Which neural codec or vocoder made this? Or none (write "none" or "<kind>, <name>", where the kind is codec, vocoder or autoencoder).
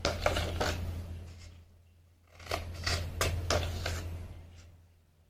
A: none